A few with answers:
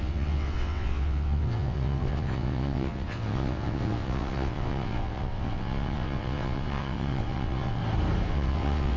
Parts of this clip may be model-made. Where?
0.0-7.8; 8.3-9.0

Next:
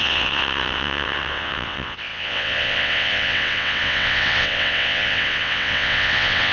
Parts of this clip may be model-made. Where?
0.0-6.5

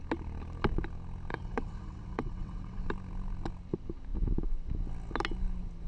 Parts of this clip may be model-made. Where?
1.3-2.9